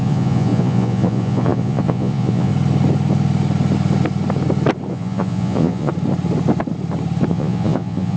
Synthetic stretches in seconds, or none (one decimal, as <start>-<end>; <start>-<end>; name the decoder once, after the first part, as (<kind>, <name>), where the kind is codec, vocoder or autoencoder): 0.0-2.5 (vocoder, Vocos); 4.9-5.9; 7.3-8.2

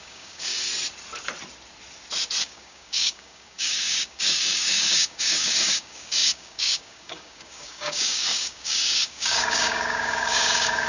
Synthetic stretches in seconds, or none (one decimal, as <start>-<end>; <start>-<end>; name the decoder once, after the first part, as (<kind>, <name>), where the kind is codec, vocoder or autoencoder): 0.0-0.7 (codec, DAC); 2.4-10.9

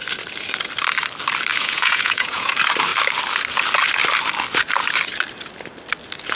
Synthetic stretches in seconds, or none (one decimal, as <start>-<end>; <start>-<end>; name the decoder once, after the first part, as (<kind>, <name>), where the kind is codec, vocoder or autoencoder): 1.5-2.5 (vocoder, Vocos)

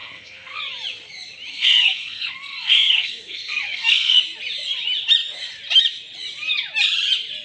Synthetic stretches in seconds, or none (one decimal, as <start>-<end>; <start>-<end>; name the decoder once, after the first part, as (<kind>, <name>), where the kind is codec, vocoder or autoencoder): 0.0-0.6 (codec, SNAC); 1.5-4.2

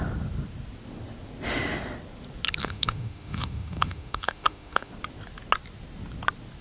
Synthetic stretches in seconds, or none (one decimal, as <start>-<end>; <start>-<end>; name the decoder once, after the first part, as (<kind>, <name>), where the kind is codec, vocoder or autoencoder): 2.6-4.9 (autoencoder, DAC-VAE)